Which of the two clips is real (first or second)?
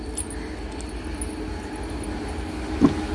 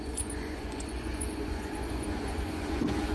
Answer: first